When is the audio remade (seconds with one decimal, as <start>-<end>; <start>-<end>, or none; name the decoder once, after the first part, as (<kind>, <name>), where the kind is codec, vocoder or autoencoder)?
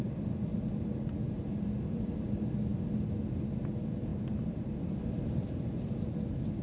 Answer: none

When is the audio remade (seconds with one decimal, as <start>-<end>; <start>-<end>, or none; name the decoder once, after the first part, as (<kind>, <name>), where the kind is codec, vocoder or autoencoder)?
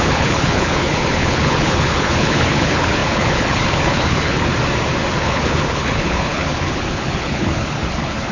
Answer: 0.0-4.5 (codec, HILCodec); 5.2-8.3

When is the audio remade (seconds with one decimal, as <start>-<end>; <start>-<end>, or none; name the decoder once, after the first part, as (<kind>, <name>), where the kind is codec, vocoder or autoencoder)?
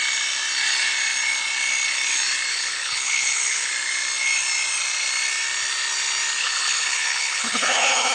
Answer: 2.5-3.7 (codec, HILCodec); 6.4-8.1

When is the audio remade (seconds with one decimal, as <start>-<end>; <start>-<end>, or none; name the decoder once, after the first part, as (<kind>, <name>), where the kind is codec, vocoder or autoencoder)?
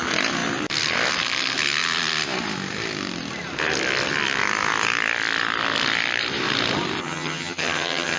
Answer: 7.0-8.2 (vocoder, HiFi-GAN)